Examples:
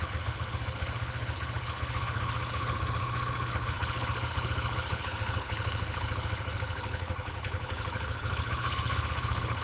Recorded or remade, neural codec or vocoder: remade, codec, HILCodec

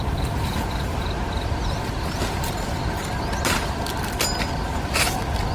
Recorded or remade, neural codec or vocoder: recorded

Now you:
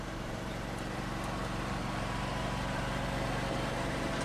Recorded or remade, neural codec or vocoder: remade, vocoder, BigVGAN v2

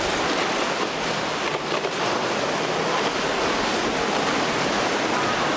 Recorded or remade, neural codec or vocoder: recorded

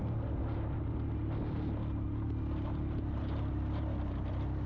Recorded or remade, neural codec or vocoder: recorded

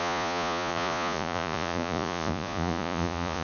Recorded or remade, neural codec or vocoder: remade, vocoder, Vocos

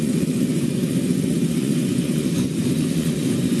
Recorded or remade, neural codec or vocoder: remade, vocoder, Vocos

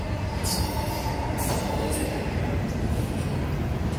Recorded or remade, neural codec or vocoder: recorded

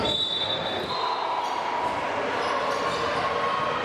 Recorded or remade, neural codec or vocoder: recorded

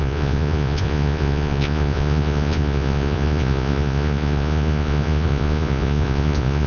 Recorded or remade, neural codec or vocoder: remade, vocoder, Vocos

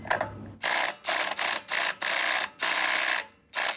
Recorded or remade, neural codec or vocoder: recorded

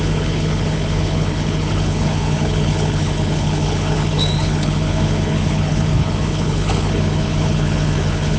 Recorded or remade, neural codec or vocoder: remade, codec, HILCodec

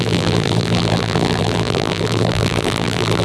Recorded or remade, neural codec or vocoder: remade, vocoder, BigVGAN v2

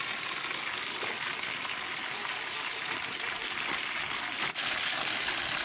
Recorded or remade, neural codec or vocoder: recorded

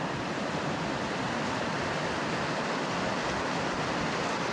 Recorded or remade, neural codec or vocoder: recorded